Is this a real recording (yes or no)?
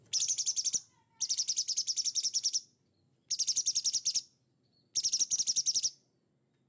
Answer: yes